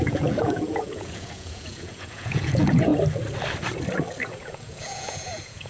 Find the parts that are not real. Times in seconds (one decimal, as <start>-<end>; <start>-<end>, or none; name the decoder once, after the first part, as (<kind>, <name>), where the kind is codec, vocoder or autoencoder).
0.0-2.9 (vocoder, Vocos); 4.2-5.7